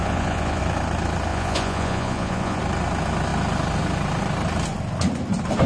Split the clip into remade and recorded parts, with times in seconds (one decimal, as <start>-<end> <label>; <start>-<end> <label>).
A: 0.0-0.6 remade; 0.6-1.3 recorded; 1.3-2.6 remade; 2.6-5.7 recorded